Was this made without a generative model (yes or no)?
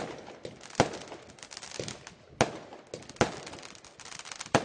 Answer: yes